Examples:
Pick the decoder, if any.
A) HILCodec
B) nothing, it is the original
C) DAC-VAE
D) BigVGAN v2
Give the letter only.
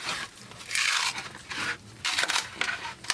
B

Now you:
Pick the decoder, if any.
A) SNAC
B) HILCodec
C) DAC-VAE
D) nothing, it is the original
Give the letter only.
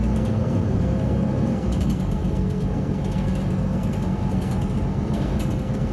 A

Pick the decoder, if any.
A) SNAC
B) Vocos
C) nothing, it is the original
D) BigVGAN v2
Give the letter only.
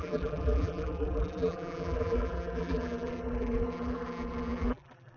D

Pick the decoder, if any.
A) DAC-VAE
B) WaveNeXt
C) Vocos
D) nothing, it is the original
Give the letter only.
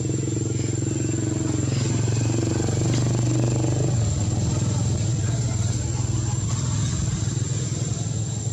D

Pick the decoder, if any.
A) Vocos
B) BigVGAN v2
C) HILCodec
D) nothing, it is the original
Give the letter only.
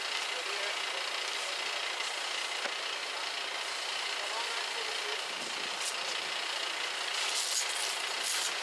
D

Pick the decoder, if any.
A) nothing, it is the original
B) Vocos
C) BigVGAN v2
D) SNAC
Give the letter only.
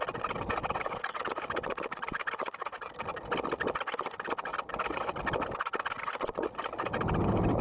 A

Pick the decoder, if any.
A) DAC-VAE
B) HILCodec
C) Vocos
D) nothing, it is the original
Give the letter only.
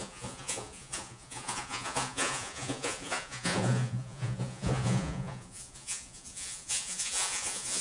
C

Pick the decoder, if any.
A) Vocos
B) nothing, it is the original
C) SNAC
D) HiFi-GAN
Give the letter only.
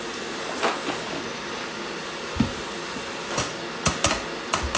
B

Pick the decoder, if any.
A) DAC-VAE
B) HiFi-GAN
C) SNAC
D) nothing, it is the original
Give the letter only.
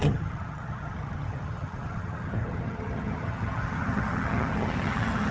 B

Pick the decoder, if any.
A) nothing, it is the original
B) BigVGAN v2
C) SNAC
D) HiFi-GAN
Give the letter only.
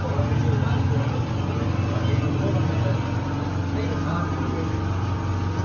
A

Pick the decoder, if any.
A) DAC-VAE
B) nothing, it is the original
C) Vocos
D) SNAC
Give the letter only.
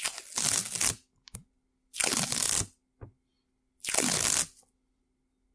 B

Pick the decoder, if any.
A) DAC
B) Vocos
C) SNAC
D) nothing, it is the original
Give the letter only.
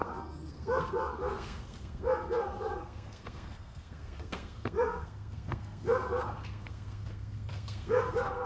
C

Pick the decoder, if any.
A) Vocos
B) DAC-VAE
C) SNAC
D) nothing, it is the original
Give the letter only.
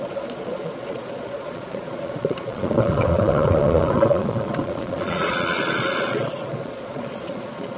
A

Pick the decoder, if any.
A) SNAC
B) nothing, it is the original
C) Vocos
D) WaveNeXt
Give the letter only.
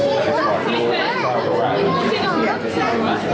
B